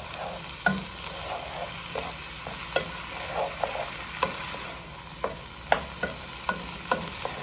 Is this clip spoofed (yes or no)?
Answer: no